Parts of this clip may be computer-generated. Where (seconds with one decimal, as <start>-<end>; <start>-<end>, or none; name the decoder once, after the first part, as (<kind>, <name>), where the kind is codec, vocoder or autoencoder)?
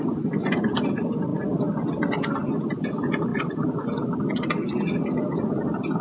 none